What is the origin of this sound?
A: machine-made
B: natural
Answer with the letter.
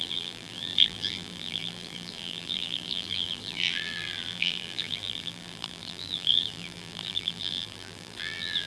A